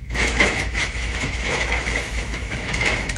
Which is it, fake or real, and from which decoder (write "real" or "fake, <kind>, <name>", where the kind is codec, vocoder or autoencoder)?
fake, autoencoder, DAC-VAE